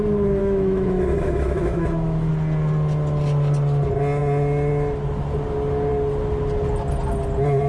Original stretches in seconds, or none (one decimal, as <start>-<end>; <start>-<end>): 0.0-0.4; 2.3-7.7